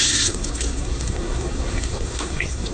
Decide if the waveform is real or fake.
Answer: fake